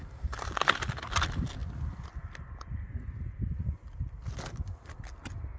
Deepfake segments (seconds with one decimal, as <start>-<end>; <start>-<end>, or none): 0.0-1.6; 5.0-5.6